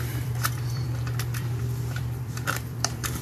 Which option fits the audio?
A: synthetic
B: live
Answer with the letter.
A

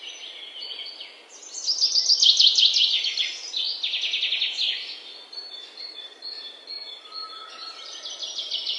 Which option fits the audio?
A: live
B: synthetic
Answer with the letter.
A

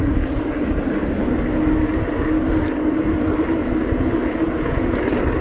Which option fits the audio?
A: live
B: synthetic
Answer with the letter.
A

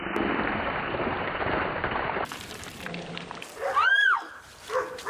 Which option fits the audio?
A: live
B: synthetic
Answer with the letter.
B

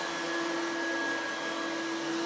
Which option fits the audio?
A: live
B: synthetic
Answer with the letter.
A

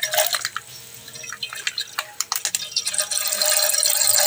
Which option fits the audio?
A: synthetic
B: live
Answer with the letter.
B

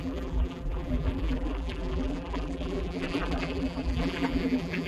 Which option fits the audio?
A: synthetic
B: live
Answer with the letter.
A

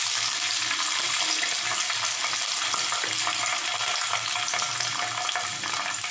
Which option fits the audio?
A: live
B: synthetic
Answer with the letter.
A